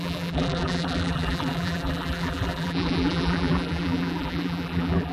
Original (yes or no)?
no